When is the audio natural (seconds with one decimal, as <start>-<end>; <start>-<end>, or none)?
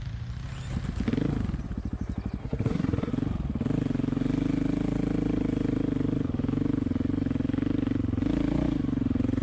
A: 0.0-2.4; 3.1-9.4